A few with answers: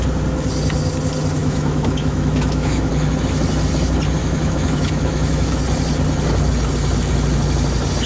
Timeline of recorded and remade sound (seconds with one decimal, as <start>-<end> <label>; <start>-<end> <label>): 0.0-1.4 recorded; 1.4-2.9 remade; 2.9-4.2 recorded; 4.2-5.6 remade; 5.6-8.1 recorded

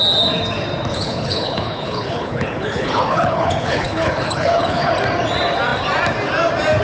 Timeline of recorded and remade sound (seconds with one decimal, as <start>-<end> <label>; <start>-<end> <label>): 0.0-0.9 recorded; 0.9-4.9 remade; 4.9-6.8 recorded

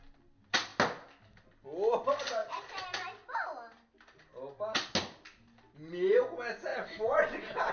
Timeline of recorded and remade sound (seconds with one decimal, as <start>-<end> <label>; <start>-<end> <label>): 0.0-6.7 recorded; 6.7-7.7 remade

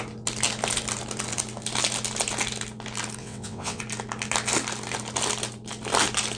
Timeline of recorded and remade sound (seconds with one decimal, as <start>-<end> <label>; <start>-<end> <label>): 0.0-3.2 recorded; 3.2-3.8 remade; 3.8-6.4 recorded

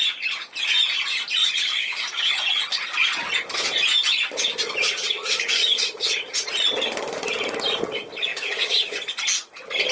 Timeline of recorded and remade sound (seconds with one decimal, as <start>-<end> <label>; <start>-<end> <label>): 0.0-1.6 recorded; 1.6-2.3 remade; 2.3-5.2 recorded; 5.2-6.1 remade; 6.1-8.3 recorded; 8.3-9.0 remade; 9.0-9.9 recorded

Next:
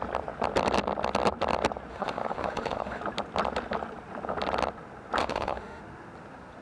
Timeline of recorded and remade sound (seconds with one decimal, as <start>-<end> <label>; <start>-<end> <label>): 0.0-1.9 recorded; 1.9-3.0 remade; 3.0-5.2 recorded; 5.2-5.8 remade; 5.8-6.6 recorded

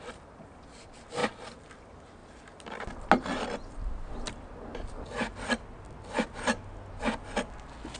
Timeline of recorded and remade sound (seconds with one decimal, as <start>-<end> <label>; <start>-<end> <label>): 0.0-8.0 recorded

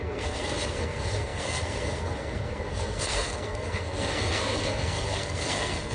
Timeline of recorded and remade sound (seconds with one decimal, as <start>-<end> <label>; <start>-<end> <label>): 0.0-5.9 remade